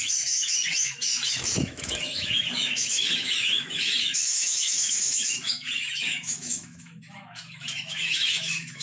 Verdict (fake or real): fake